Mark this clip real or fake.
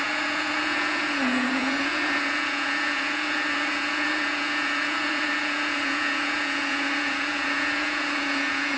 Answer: fake